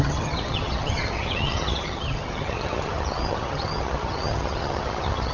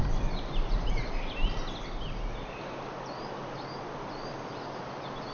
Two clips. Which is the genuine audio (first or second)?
second